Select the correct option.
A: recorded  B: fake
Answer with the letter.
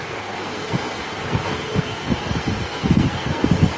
B